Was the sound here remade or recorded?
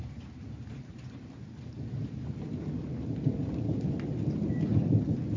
recorded